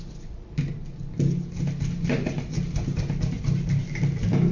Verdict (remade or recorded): recorded